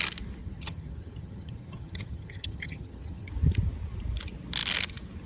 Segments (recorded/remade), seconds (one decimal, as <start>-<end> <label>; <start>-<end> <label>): 0.0-0.4 recorded; 0.4-3.3 remade; 3.3-5.3 recorded